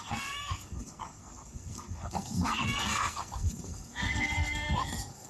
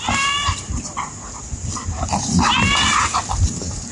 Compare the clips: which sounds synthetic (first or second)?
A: first